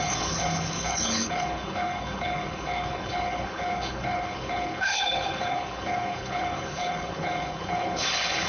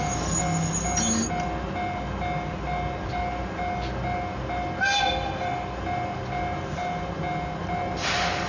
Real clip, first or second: second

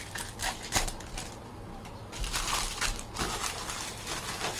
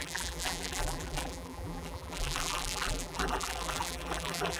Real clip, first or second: first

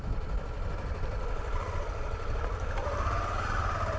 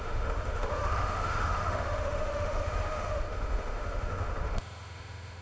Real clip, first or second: first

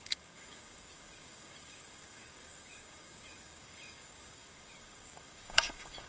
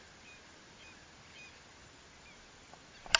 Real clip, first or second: second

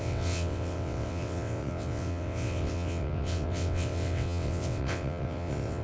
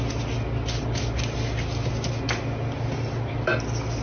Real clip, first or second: second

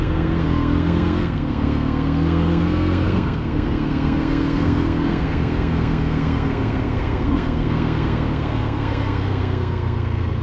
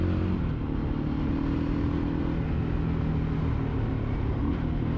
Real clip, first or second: second